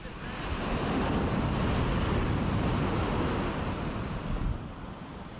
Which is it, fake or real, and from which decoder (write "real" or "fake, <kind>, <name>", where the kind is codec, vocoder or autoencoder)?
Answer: real